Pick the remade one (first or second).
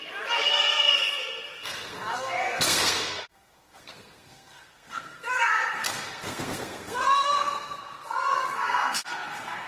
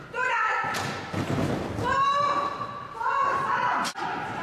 first